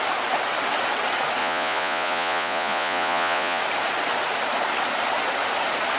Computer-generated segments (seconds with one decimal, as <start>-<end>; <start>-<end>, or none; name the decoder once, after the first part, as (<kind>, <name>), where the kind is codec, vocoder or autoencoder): 1.4-3.6 (vocoder, Vocos)